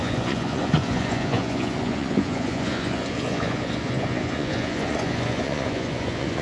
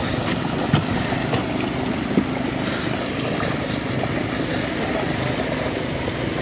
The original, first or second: second